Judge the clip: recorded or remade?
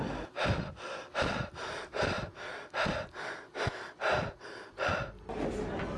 recorded